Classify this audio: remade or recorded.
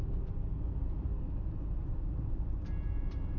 recorded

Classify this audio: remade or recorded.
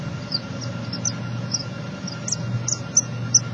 recorded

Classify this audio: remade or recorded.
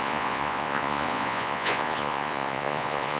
remade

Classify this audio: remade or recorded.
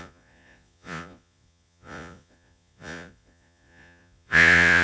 remade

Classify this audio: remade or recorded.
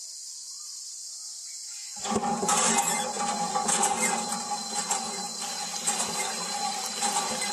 recorded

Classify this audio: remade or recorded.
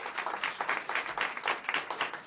recorded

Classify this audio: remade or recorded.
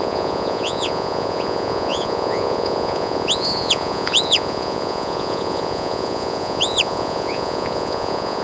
remade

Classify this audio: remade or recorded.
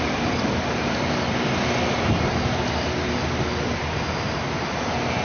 recorded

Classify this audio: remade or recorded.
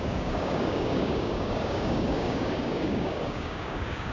remade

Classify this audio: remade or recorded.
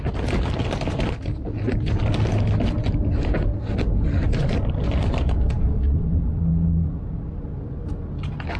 recorded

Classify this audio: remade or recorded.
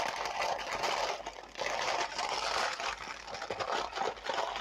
remade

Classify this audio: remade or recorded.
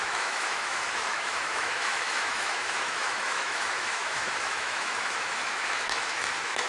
remade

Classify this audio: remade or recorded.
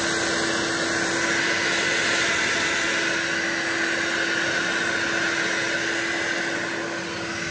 recorded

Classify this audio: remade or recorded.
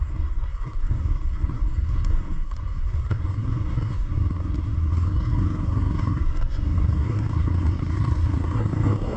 remade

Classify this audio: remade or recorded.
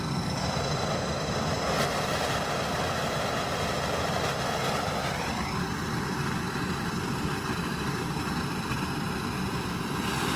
recorded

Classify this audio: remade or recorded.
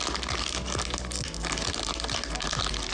recorded